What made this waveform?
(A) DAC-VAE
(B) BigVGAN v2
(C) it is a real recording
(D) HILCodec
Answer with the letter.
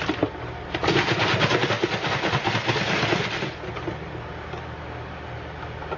C